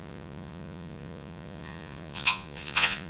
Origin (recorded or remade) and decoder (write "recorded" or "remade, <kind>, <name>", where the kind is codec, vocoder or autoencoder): remade, vocoder, Vocos